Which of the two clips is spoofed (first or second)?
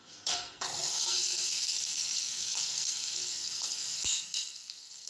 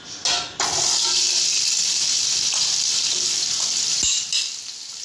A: first